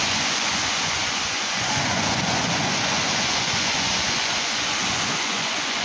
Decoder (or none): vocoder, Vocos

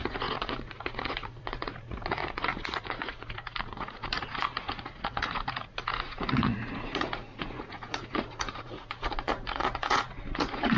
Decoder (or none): vocoder, Vocos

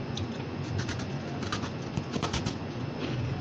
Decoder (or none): vocoder, Vocos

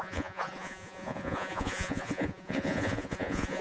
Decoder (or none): vocoder, Vocos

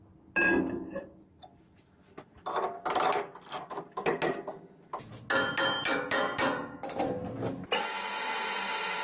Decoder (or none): none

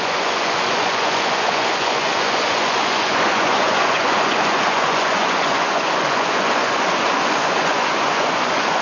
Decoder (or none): vocoder, Vocos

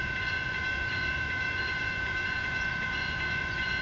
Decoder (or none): vocoder, Vocos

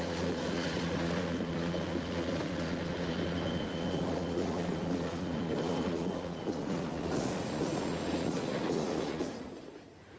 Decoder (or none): vocoder, Vocos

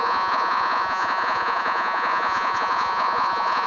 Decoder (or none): vocoder, Vocos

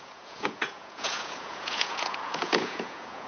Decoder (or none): vocoder, Vocos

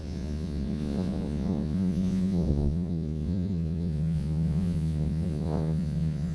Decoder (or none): vocoder, Vocos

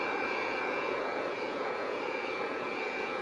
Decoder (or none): vocoder, Vocos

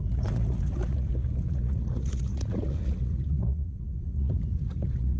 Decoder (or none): vocoder, Vocos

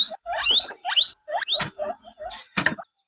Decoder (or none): none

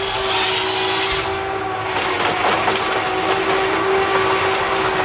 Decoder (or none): none